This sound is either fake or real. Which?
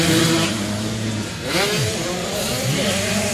fake